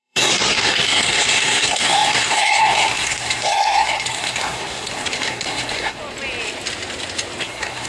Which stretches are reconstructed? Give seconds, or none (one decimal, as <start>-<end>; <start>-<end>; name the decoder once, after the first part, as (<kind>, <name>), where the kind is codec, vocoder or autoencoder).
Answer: 0.0-6.0 (codec, SNAC); 7.4-7.9